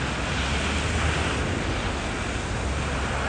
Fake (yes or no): no